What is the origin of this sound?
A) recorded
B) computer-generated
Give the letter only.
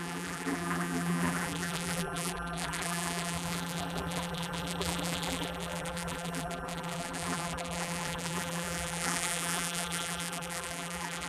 B